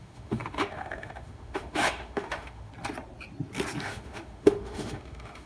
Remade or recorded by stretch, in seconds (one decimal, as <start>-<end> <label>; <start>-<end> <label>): 0.0-2.7 remade; 2.7-3.8 recorded; 3.8-5.5 remade

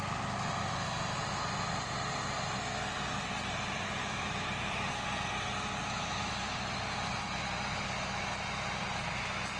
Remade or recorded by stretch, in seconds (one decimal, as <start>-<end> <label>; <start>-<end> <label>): 0.0-4.0 recorded; 4.0-5.0 remade; 5.0-5.8 recorded; 5.8-6.3 remade; 6.3-9.6 recorded

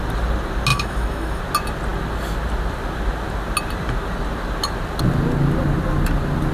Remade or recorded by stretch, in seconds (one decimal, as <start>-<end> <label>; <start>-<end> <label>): 0.0-0.7 recorded; 0.7-1.4 remade; 1.4-6.5 recorded